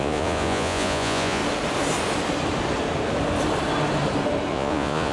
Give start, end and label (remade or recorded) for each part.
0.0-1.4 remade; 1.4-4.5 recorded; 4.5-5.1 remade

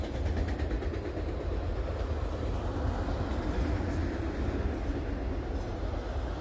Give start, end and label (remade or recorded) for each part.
0.0-6.4 recorded

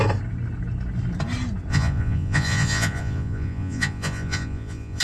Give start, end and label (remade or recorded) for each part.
0.0-1.7 recorded; 1.7-5.0 remade

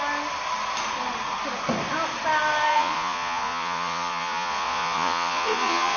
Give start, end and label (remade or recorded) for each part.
0.0-2.7 recorded; 2.7-6.0 remade